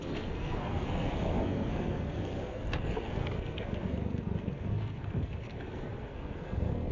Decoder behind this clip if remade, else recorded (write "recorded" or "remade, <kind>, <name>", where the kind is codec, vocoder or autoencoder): remade, codec, SNAC